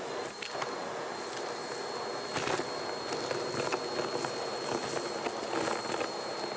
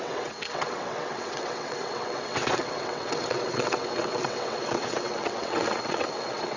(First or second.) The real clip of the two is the first